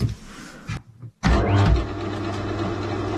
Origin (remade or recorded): recorded